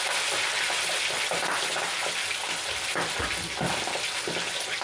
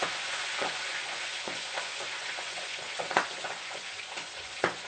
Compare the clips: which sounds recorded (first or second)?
first